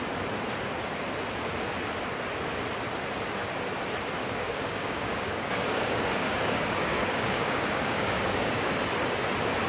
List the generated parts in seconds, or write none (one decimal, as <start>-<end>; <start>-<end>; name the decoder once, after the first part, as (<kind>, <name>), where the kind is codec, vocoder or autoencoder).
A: 4.2-8.7 (codec, DAC)